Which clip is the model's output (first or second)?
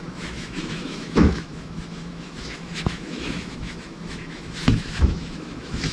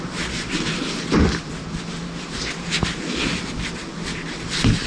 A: first